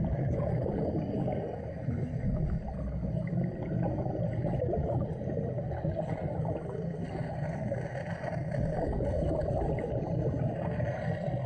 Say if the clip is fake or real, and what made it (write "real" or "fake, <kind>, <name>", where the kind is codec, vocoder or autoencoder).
real